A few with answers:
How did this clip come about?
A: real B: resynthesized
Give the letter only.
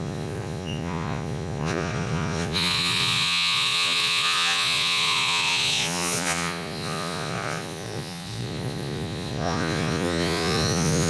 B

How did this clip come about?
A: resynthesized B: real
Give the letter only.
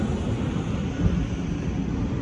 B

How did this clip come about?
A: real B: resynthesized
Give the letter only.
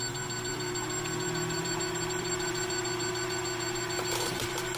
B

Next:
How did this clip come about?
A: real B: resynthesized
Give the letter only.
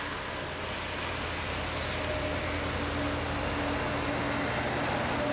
A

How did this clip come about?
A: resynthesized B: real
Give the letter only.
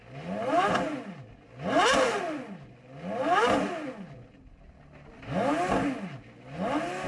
B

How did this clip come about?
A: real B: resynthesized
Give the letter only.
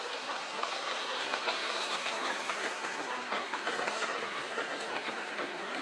B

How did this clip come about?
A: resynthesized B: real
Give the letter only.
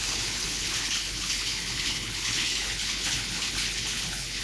A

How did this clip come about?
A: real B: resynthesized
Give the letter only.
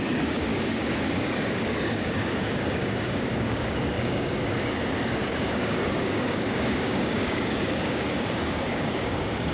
B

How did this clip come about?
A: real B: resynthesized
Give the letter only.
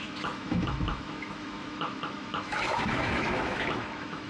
B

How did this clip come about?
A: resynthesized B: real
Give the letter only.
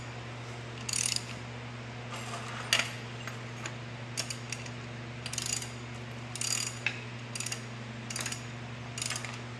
B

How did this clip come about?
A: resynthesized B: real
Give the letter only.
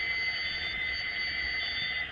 B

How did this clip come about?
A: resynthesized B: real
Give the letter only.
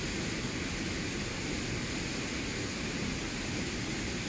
B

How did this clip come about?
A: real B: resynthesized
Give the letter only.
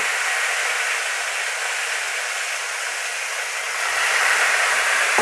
A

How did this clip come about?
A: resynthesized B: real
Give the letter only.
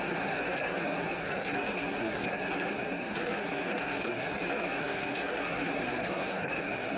A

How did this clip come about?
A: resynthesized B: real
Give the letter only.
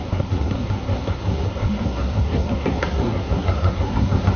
A